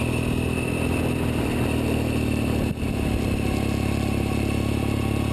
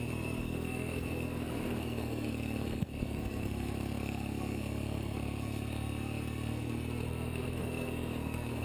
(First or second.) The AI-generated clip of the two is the second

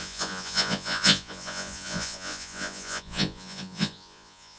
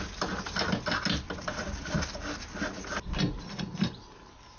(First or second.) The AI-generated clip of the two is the first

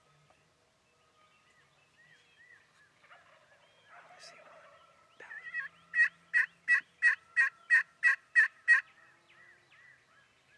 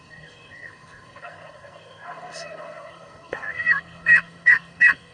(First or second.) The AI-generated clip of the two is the second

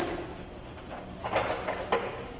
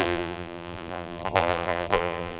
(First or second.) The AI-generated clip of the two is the second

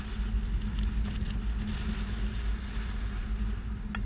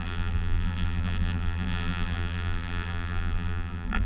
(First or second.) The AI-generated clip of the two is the second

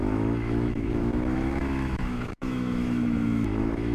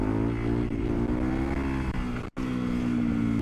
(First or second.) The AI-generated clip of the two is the first